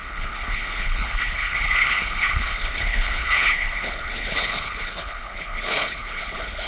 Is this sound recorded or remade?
remade